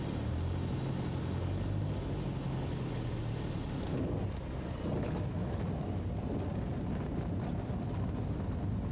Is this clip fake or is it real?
real